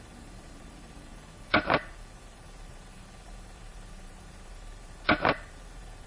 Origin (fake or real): fake